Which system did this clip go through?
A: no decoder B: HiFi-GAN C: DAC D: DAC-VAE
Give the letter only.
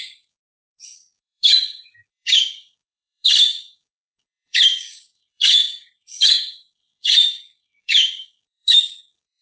C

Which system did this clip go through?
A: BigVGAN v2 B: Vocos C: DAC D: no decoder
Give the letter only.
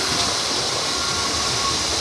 D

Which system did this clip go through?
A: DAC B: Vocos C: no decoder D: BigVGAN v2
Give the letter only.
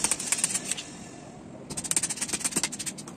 C